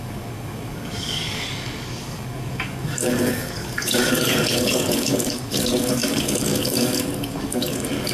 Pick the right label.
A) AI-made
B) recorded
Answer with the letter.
A